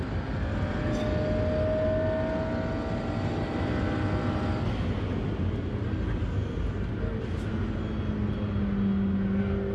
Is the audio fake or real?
real